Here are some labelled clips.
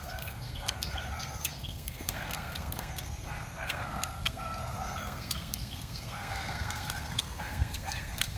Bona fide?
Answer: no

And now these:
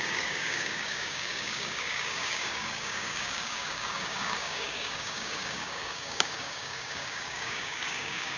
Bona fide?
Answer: no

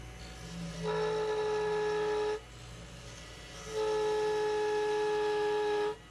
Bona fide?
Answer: yes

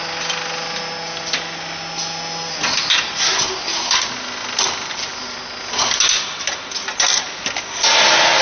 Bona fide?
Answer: yes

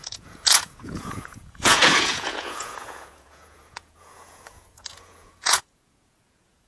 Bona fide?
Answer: no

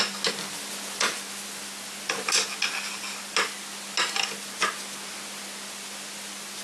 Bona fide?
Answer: yes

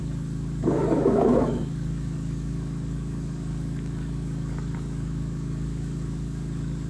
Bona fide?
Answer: no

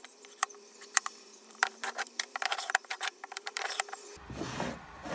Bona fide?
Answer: no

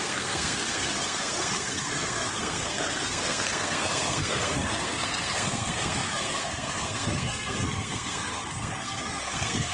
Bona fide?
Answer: no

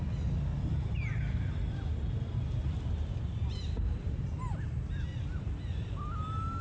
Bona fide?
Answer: yes